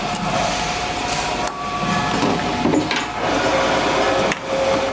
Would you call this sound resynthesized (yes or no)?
no